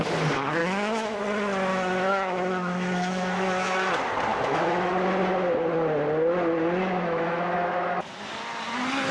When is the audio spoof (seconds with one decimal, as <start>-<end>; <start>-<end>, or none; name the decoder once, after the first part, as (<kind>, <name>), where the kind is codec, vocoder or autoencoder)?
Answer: 0.6-1.2 (autoencoder, DAC-VAE); 1.7-3.9; 4.3-4.9; 6.8-8.0